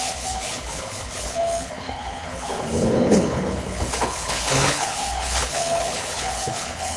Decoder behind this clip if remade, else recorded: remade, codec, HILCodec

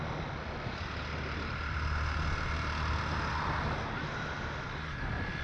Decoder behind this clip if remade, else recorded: recorded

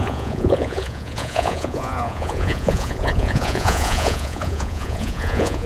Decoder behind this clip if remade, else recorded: remade, vocoder, Vocos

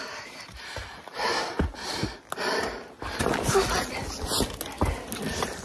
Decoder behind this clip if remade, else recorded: recorded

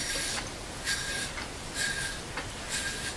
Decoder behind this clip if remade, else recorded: recorded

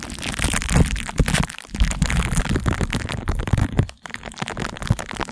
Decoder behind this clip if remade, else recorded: remade, vocoder, BigVGAN v2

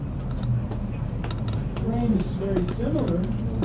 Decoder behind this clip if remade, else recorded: recorded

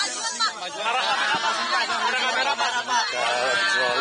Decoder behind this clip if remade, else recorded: recorded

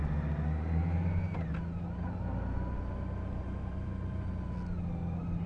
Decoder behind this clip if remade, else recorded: recorded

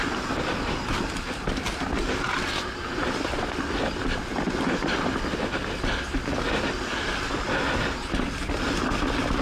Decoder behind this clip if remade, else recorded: recorded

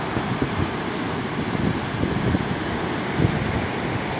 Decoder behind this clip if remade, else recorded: recorded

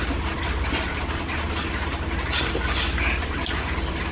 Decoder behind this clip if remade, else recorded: recorded